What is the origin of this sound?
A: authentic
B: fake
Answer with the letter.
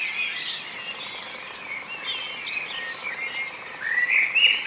A